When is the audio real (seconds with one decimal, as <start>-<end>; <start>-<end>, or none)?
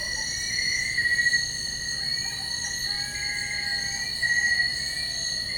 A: 0.0-1.3; 2.8-3.4; 4.2-5.6